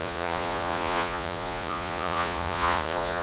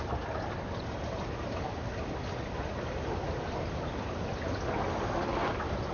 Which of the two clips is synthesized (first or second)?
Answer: first